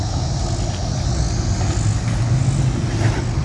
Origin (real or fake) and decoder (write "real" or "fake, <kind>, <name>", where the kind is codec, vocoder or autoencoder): real